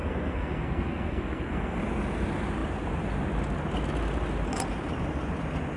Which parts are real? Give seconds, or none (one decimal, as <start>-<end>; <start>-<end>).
1.8-5.8